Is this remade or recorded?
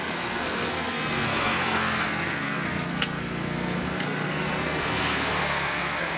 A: remade